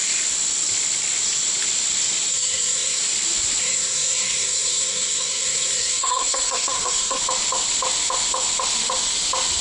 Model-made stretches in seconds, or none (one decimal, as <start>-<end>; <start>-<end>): 2.3-3.0; 3.6-7.2